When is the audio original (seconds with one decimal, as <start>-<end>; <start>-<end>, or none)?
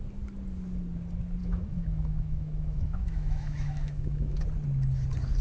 0.0-1.4; 4.4-5.4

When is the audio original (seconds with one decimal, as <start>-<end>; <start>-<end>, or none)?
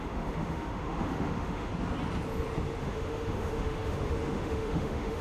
1.7-2.8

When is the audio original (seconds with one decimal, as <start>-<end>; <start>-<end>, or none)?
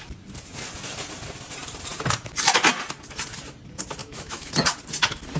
0.0-4.0; 4.5-5.4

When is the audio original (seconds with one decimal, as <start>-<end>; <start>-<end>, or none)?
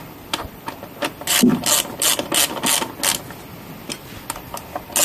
0.0-5.0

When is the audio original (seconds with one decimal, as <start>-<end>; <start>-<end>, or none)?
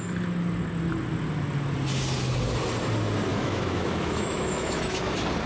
0.0-3.3; 5.1-5.5